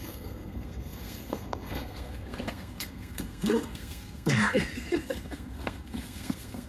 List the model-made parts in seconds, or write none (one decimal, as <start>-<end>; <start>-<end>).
0.0-6.7

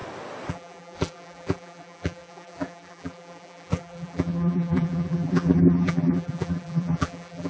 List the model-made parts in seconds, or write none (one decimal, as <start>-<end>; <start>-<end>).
0.5-7.5

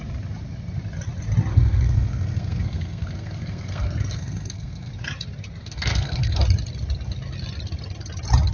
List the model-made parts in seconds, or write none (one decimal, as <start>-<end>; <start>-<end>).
1.5-4.9; 5.6-6.4

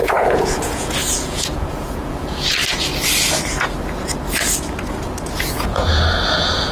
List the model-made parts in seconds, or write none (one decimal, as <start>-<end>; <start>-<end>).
0.0-2.6; 5.5-6.7